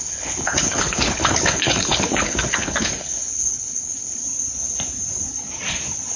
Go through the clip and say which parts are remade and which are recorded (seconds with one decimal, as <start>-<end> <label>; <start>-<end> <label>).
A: 0.0-4.2 remade; 4.2-6.2 recorded